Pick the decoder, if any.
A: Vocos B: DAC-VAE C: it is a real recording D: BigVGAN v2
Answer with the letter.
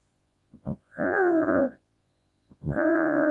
A